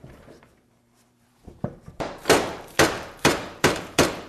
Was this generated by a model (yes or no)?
yes